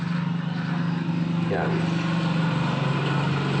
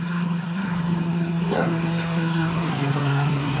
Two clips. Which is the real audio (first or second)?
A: first